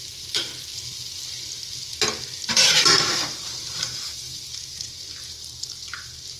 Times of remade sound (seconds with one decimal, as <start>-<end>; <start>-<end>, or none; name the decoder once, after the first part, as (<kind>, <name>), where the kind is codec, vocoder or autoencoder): 0.0-0.5 (vocoder, BigVGAN v2); 2.5-6.4